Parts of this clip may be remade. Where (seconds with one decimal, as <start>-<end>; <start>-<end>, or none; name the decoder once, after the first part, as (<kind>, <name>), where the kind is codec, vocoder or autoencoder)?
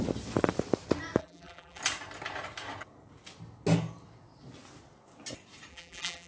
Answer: 1.2-1.8 (vocoder, BigVGAN v2); 5.7-6.3